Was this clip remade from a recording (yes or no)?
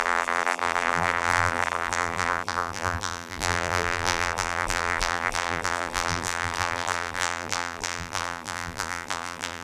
yes